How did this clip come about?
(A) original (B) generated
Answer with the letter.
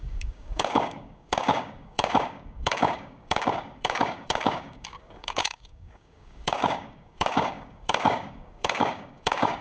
B